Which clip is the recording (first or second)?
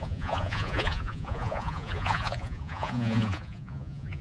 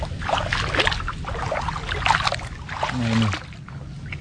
second